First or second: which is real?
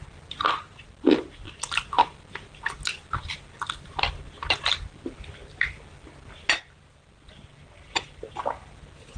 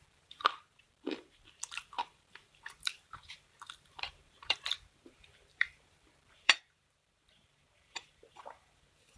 first